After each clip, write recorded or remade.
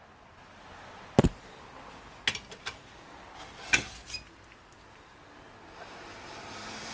recorded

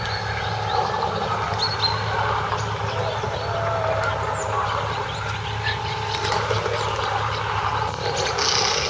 recorded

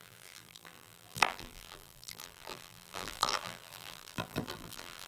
remade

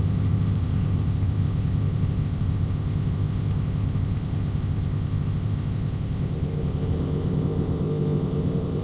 remade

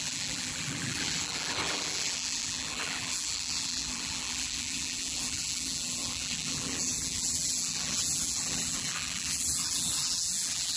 remade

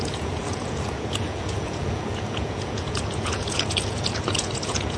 remade